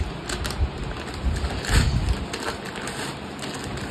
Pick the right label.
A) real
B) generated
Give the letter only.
A